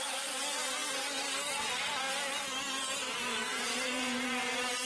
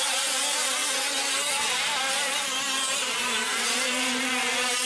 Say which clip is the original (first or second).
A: first